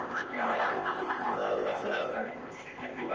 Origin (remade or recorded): remade